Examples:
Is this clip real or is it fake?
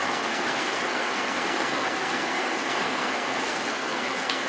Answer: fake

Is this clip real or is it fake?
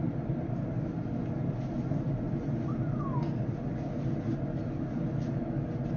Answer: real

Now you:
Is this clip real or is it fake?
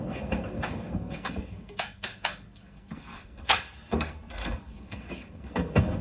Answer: fake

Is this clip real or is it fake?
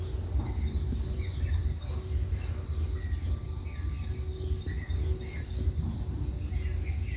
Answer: real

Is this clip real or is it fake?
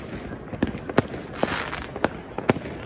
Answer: real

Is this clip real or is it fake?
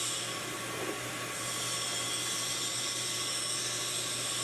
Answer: real